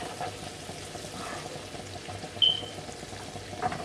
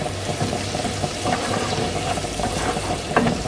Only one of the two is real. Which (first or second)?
first